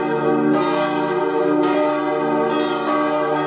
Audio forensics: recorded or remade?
recorded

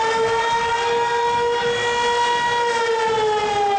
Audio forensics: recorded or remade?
recorded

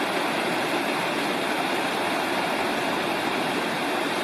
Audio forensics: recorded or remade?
recorded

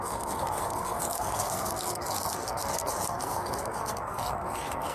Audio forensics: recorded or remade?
remade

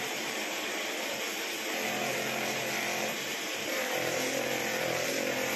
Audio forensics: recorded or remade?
remade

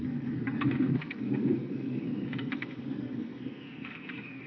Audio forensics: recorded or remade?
remade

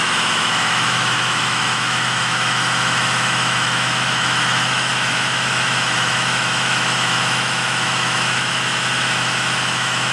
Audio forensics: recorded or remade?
remade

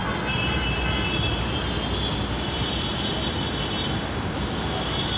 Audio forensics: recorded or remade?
recorded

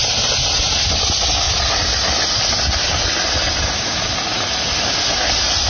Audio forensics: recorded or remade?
recorded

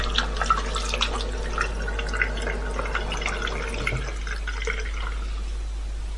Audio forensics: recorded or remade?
recorded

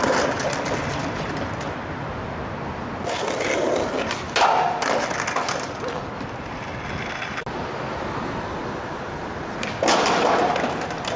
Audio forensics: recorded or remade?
recorded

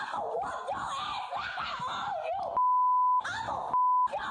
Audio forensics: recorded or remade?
recorded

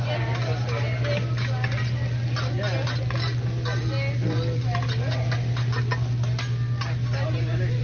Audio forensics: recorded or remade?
recorded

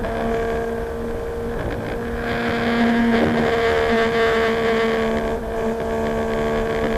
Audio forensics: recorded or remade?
recorded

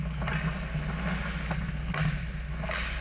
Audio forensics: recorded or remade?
recorded